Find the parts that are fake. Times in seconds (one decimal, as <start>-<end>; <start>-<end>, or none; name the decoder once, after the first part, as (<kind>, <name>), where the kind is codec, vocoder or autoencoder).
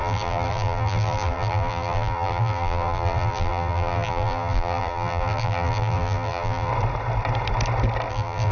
0.0-6.7 (vocoder, BigVGAN v2); 8.1-8.5